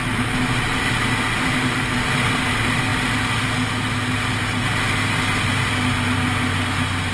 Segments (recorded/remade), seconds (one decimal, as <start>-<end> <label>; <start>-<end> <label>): 0.0-7.1 recorded